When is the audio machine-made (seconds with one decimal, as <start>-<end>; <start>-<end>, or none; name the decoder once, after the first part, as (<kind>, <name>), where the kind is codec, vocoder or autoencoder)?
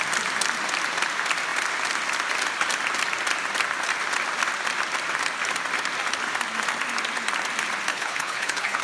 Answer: 7.9-8.8 (codec, HILCodec)